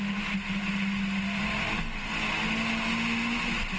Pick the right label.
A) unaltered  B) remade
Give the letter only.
A